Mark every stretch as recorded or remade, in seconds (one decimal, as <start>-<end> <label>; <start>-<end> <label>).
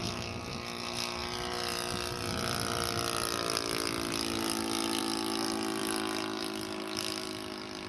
0.0-7.9 recorded